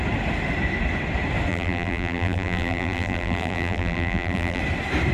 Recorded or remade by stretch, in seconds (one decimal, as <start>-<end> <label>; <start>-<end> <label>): 0.0-1.5 recorded; 1.5-4.6 remade; 4.6-5.1 recorded